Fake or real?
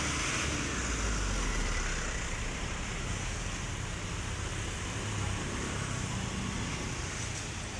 real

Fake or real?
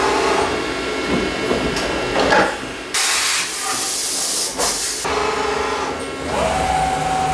real